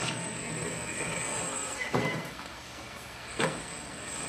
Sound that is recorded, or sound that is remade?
remade